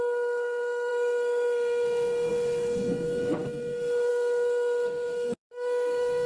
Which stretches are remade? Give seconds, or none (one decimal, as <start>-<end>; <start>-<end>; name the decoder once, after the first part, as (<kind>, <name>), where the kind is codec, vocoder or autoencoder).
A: 0.0-6.3 (codec, SNAC)